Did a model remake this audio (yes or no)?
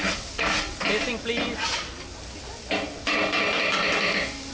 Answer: no